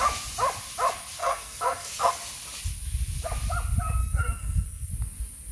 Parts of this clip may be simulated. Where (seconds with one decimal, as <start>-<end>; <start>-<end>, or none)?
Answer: 1.2-2.1; 4.0-4.9